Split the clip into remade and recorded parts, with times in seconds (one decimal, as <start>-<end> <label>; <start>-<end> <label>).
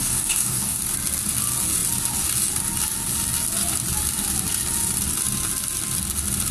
0.0-0.8 remade; 0.8-6.5 recorded